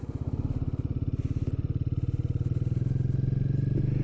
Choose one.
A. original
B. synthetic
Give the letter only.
A